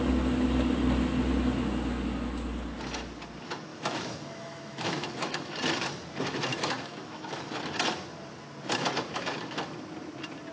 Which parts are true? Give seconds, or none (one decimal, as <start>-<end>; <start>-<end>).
0.0-3.7; 5.5-6.5; 7.6-10.5